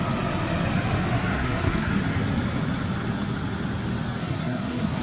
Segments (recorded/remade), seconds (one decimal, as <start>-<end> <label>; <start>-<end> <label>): 0.0-1.3 recorded; 1.3-1.9 remade; 1.9-4.2 recorded; 4.2-5.0 remade